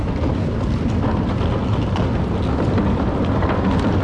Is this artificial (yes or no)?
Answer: no